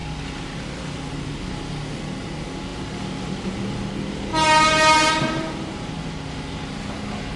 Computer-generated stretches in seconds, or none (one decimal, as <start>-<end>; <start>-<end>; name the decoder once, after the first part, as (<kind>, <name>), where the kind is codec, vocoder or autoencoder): 4.3-5.1 (vocoder, BigVGAN v2)